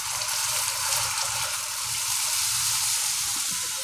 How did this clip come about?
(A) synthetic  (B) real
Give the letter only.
A